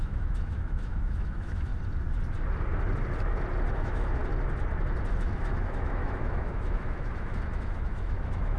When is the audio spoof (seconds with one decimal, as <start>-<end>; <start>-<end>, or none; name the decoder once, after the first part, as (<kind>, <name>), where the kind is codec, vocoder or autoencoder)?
0.0-1.7 (autoencoder, DAC-VAE); 3.7-4.2; 5.1-8.6